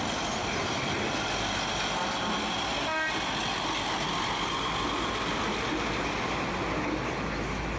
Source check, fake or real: real